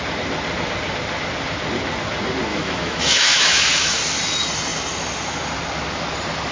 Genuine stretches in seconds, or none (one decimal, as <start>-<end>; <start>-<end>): 0.0-2.5; 4.0-6.5